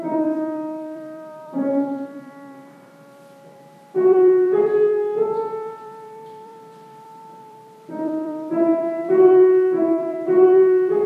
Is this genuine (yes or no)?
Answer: no